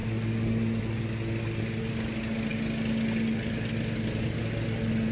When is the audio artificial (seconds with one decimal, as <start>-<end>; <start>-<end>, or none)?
none